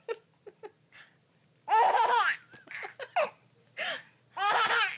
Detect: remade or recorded recorded